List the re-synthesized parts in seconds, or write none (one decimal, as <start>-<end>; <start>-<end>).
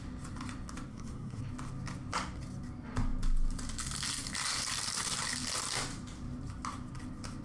0.9-1.4